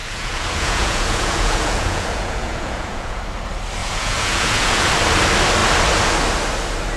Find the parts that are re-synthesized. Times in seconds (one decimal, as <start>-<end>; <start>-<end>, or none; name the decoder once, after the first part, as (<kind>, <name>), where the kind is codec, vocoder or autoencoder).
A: 0.0-3.2 (vocoder, Vocos); 3.8-4.9